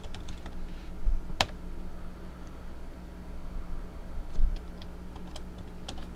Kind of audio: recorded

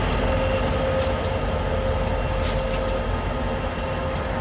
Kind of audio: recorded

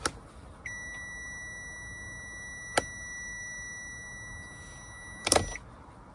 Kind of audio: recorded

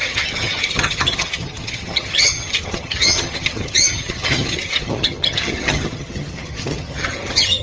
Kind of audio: remade